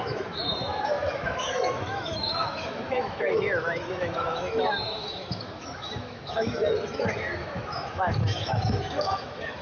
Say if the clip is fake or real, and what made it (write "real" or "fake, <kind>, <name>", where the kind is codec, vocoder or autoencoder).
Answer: fake, autoencoder, DAC-VAE